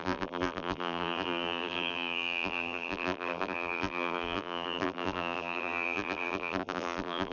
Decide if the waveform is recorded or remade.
remade